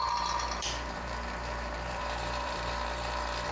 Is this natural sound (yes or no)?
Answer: no